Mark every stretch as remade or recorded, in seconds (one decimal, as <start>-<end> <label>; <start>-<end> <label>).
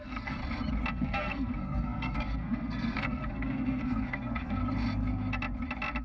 0.0-0.4 remade; 0.4-0.9 recorded; 0.9-4.6 remade; 4.6-6.0 recorded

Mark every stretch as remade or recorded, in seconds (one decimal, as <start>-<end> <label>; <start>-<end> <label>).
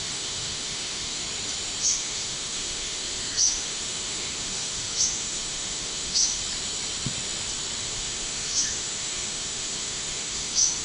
0.0-1.2 remade; 1.2-1.8 recorded; 1.8-6.4 remade; 6.4-7.8 recorded; 7.8-10.8 remade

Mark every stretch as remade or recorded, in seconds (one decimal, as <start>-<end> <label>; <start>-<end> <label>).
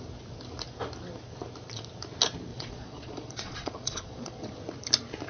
0.0-2.5 recorded; 2.5-4.5 remade; 4.5-5.3 recorded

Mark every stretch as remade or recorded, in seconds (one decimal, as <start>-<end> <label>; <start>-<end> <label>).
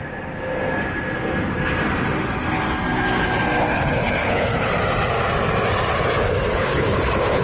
0.0-3.7 recorded; 3.7-4.7 remade; 4.7-6.5 recorded; 6.5-7.4 remade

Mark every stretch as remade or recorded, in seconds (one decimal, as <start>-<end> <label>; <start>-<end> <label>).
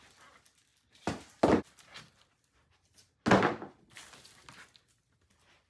0.0-5.7 recorded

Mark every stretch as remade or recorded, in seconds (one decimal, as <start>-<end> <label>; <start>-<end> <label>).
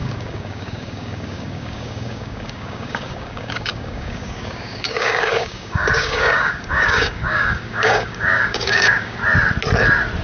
0.0-9.2 remade; 9.2-10.2 recorded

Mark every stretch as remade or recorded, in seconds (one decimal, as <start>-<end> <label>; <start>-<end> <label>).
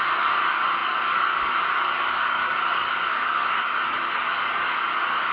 0.0-5.3 remade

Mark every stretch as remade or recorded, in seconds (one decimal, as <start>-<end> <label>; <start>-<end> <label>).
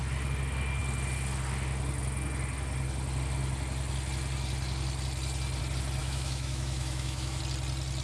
0.0-6.0 recorded; 6.0-7.4 remade; 7.4-8.0 recorded